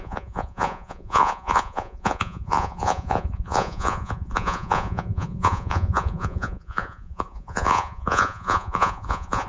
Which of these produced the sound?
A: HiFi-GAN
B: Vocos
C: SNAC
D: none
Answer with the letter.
B